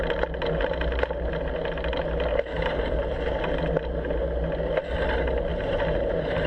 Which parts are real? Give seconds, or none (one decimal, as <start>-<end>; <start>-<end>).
0.0-2.3; 3.5-5.5